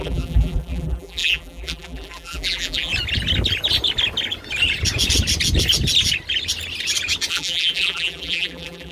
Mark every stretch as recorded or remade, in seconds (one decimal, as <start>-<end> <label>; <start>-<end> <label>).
0.0-2.9 remade; 2.9-7.3 recorded; 7.3-8.9 remade